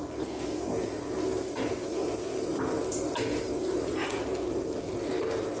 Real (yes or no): yes